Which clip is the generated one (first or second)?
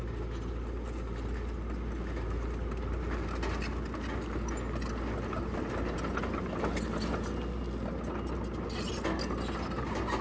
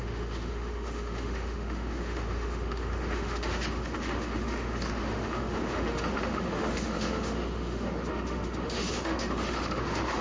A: second